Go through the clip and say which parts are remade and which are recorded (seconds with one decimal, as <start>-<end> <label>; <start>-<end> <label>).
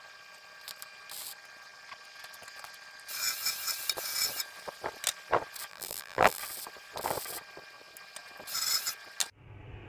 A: 0.0-5.7 recorded; 5.7-6.4 remade; 6.4-9.9 recorded